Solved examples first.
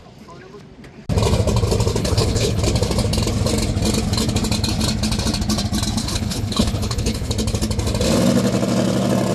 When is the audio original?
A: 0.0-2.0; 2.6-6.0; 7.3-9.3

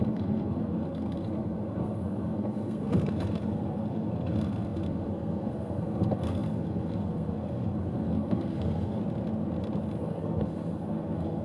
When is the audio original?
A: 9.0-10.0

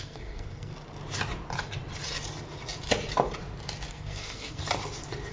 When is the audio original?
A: 0.7-3.9; 4.6-5.3

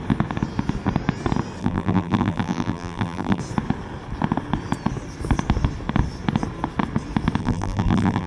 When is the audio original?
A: 0.0-1.6; 3.4-7.4

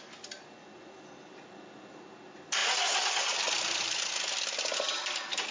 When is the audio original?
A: 0.0-5.5